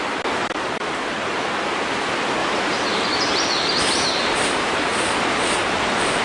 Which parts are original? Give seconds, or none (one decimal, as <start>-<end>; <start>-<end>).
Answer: 0.0-2.4